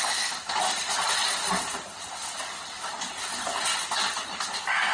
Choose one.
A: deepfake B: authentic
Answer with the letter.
B